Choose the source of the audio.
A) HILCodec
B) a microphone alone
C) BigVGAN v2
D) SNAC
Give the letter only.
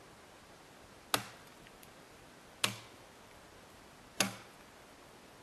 B